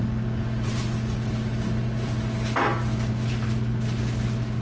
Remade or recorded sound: recorded